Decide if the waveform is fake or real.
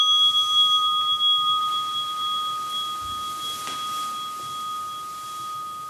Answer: real